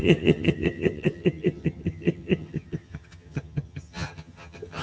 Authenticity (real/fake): fake